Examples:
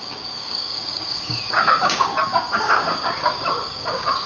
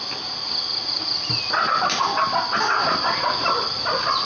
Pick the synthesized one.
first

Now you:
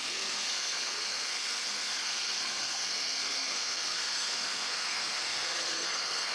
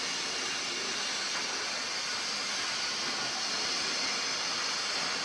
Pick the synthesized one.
first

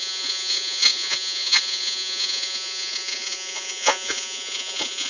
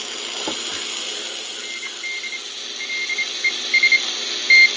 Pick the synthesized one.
first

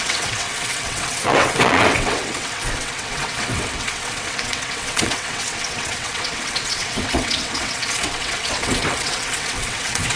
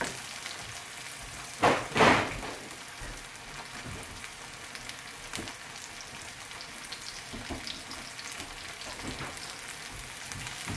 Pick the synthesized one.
first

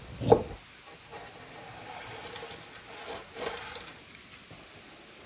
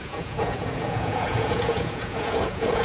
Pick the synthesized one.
second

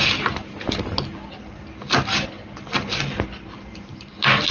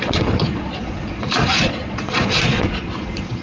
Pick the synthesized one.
second